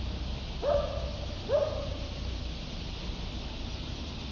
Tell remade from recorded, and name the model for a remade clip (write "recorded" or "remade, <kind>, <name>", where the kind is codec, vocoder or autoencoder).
recorded